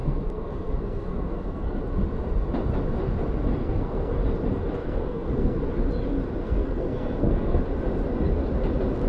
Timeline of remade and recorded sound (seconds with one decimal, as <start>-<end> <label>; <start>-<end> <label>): 0.0-1.8 remade; 1.8-3.6 recorded; 3.6-4.1 remade; 4.1-4.8 recorded; 4.8-5.6 remade; 5.6-6.4 recorded; 6.4-7.6 remade; 7.6-9.1 recorded